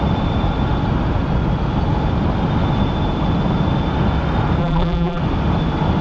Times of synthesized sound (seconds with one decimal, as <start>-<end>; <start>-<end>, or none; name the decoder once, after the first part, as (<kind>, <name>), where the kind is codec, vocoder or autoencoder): 4.6-5.2 (vocoder, BigVGAN v2)